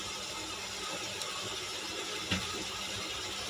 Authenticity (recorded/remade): recorded